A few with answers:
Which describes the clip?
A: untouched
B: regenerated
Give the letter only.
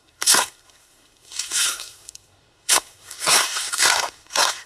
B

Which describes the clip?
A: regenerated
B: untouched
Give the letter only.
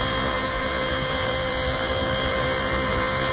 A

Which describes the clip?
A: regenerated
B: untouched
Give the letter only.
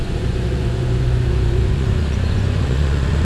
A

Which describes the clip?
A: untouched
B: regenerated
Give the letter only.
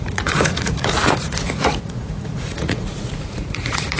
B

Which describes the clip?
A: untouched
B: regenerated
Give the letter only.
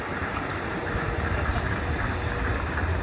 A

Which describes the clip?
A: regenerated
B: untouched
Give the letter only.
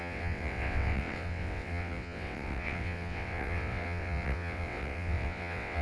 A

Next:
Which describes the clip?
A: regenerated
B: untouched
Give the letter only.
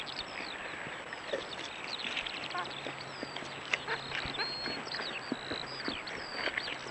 B